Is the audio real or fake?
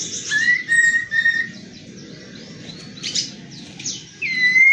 fake